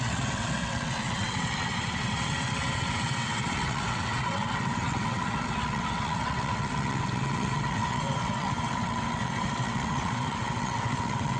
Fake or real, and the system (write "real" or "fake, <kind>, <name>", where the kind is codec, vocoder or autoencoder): fake, vocoder, WaveNeXt